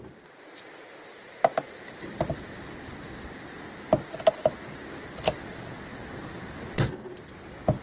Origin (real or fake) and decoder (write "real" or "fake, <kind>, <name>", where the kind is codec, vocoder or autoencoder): real